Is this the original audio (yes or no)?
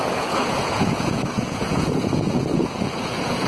no